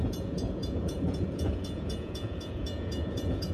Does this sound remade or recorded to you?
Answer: remade